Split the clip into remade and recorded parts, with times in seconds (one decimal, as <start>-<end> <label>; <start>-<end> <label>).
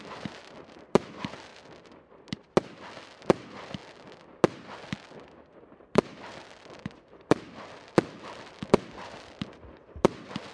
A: 0.0-1.5 remade; 1.5-3.2 recorded; 3.2-3.8 remade; 3.8-5.4 recorded; 5.4-10.5 remade